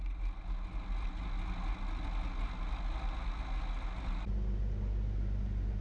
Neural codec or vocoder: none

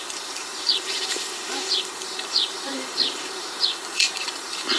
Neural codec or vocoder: vocoder, BigVGAN v2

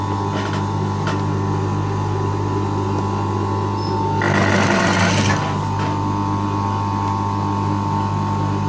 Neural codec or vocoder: none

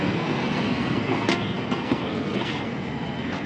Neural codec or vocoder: codec, SNAC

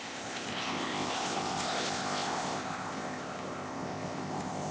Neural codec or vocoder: codec, ZipCodec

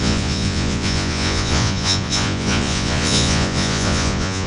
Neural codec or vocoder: vocoder, Vocos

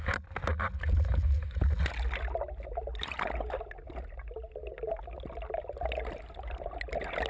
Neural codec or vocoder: none